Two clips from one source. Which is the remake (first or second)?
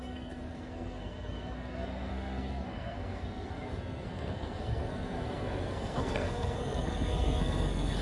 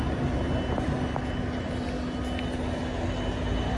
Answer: first